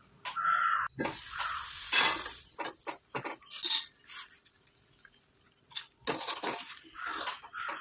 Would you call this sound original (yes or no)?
yes